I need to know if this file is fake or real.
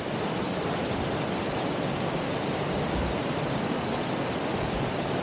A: real